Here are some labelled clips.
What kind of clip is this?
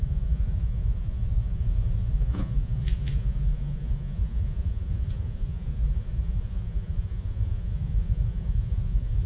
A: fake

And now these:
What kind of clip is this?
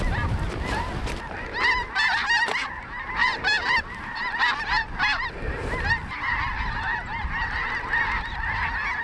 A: real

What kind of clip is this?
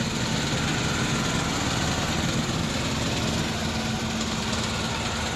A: real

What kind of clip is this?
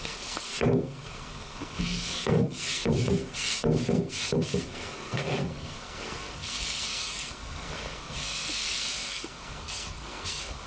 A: fake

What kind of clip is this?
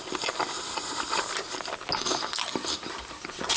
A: real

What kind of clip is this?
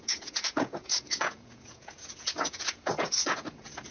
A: fake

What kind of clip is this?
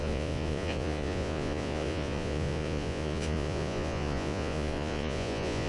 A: fake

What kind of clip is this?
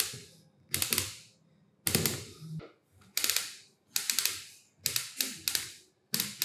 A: real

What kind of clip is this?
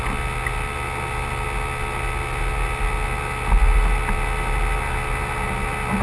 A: real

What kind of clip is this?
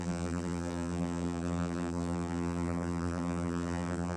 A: fake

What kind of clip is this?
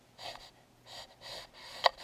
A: real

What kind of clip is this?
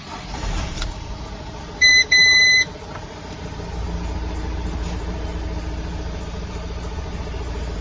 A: fake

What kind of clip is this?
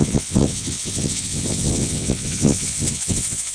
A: fake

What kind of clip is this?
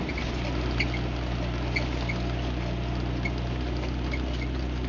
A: real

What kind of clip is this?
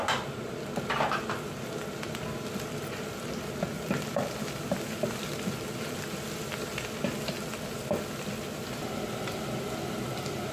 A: real